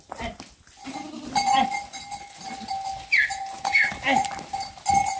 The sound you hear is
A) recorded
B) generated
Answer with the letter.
A